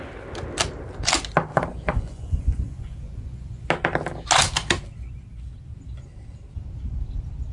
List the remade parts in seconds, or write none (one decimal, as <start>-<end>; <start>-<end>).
1.5-3.7

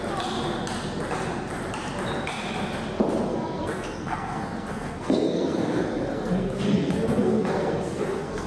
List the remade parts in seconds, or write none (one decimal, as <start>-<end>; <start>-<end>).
3.3-8.5

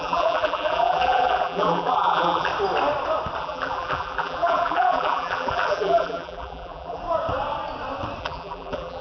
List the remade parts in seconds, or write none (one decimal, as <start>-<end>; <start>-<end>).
0.0-2.5; 3.4-7.0; 8.2-9.0

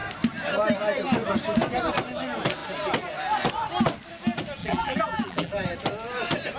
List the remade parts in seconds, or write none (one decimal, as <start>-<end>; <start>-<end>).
4.6-5.5

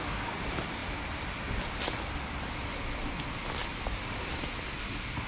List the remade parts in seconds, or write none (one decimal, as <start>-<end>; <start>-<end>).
none

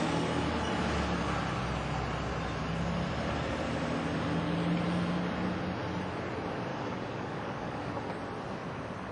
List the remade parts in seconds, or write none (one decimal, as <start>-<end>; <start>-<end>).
6.7-7.9

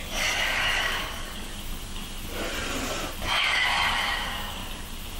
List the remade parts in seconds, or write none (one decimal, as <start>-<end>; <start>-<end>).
0.0-1.5; 3.4-4.6